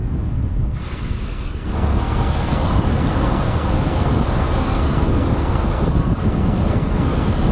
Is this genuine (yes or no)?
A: no